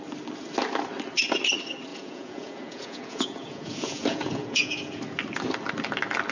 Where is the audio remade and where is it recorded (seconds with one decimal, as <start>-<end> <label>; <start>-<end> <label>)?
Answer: 0.0-1.9 recorded; 1.9-5.0 remade; 5.0-6.3 recorded